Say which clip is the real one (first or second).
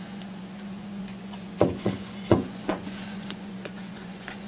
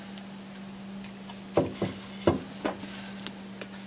second